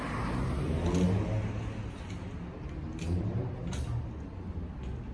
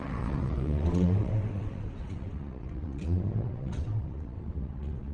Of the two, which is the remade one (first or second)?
second